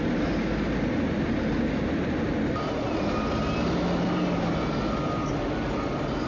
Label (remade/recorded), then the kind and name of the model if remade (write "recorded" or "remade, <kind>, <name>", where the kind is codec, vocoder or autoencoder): recorded